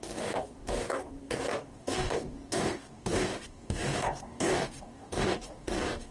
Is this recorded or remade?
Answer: remade